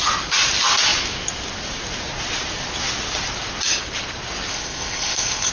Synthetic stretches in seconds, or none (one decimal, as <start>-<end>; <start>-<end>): 4.5-5.5